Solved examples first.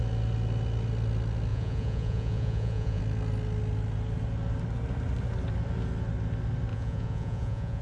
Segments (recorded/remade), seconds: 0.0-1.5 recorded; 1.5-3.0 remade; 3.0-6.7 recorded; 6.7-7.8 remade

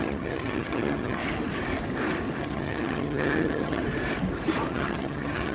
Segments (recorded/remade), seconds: 0.0-1.2 remade; 1.2-2.4 recorded; 2.4-3.8 remade; 3.8-4.7 recorded; 4.7-5.5 remade

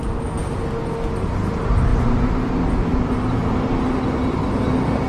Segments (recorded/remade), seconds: 0.0-5.1 recorded

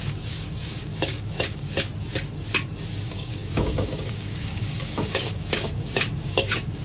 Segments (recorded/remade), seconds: 0.0-1.9 remade; 1.9-3.0 recorded; 3.0-6.8 remade

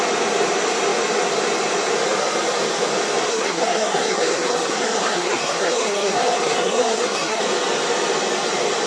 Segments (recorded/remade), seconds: 0.0-3.3 recorded; 3.3-7.4 remade; 7.4-8.9 recorded

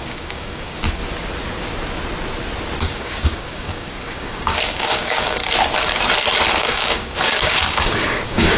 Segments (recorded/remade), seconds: 0.0-1.0 remade; 1.0-2.8 recorded; 2.8-5.4 remade; 5.4-6.6 recorded; 6.6-8.6 remade

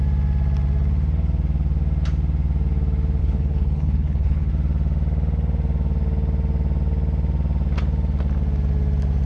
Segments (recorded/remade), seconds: 0.0-3.2 recorded; 3.2-4.5 remade; 4.5-9.3 recorded

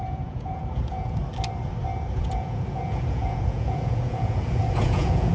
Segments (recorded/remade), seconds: 0.0-1.2 remade; 1.2-2.1 recorded; 2.1-5.3 remade